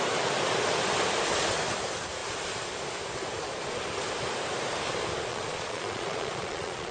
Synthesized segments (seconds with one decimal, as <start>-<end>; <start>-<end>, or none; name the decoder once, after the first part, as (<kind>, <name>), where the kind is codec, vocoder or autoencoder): 5.3-6.9 (vocoder, Vocos)